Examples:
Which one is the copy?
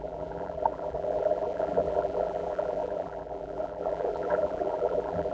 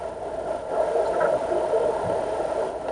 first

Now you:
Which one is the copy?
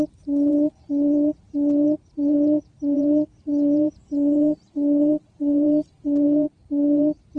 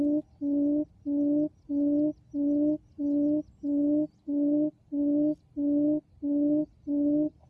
first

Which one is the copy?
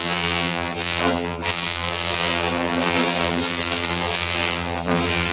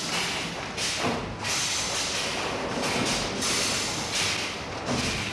first